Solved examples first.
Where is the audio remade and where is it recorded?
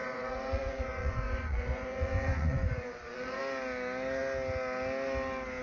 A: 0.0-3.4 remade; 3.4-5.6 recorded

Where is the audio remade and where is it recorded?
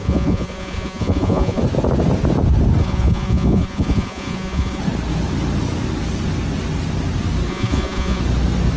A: 0.0-1.6 remade; 1.6-2.8 recorded; 2.8-4.8 remade; 4.8-7.5 recorded; 7.5-8.2 remade; 8.2-8.8 recorded